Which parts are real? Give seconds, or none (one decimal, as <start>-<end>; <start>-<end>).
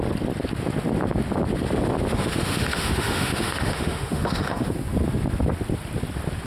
0.0-2.1; 4.7-6.5